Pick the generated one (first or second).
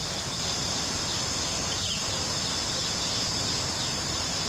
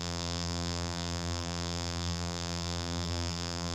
second